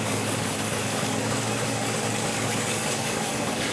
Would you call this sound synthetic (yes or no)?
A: yes